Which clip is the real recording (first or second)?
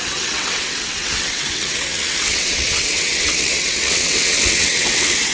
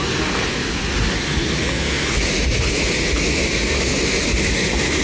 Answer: second